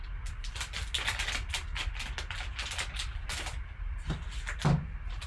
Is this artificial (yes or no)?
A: no